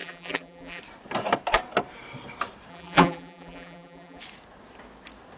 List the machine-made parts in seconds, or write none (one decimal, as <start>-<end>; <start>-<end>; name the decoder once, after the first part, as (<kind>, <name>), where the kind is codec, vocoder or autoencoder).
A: 0.0-0.8 (vocoder, BigVGAN v2); 2.7-4.2